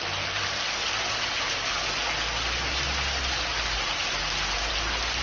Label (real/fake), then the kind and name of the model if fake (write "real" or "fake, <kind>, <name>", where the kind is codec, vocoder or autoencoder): real